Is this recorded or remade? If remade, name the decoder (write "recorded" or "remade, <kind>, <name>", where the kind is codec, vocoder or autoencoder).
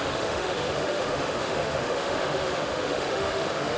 remade, autoencoder, DAC-VAE